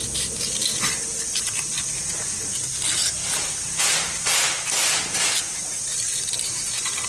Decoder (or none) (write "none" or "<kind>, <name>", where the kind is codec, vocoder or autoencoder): none